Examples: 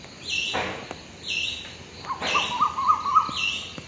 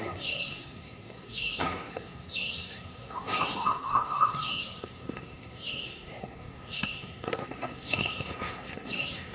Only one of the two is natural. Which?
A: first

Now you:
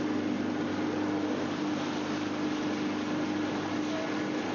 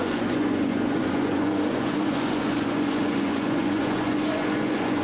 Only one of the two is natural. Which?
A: first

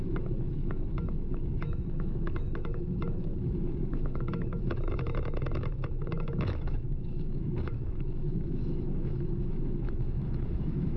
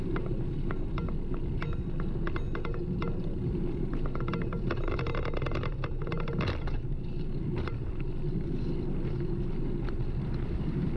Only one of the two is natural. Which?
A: second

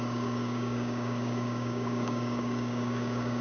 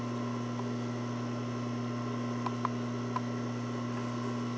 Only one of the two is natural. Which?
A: second